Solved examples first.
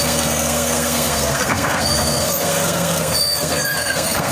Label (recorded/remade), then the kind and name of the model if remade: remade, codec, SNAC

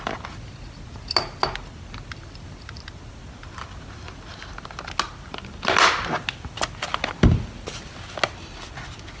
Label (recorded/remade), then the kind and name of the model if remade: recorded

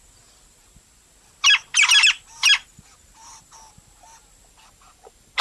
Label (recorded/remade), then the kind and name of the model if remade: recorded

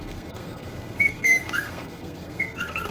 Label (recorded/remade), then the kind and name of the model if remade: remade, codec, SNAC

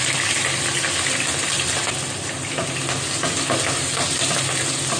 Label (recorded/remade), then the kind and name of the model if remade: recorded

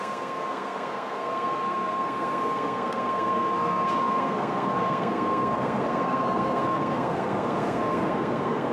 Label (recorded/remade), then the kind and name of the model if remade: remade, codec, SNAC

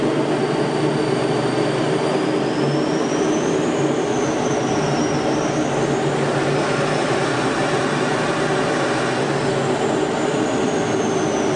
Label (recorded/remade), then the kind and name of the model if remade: recorded